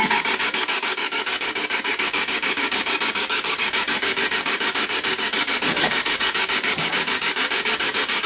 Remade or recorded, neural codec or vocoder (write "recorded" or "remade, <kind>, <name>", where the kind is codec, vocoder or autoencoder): remade, codec, DAC